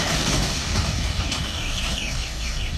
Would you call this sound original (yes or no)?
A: no